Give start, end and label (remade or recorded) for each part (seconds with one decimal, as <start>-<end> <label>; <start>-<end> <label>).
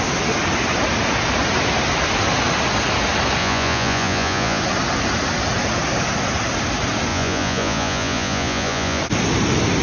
0.0-3.4 recorded; 3.4-4.6 remade; 4.6-7.1 recorded; 7.1-9.0 remade; 9.0-9.8 recorded